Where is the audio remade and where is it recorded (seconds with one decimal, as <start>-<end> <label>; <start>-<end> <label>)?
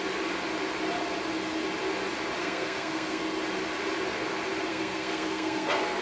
0.0-2.4 recorded; 2.4-3.2 remade; 3.2-4.7 recorded; 4.7-6.0 remade